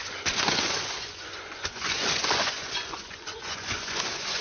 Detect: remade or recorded remade